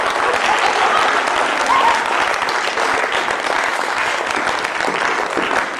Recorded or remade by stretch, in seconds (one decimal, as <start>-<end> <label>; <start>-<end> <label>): 0.0-3.7 recorded; 3.7-4.2 remade; 4.2-5.8 recorded